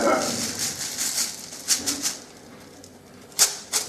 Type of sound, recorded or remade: recorded